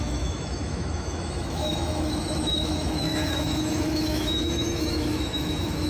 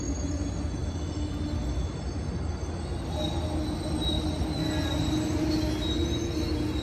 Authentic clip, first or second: second